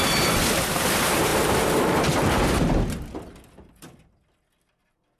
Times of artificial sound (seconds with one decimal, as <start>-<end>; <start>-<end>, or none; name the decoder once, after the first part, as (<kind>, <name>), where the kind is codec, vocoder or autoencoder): 1.3-2.6 (vocoder, BigVGAN v2)